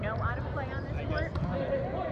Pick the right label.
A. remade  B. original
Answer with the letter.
B